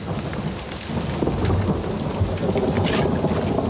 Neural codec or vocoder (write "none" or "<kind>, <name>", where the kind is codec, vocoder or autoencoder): none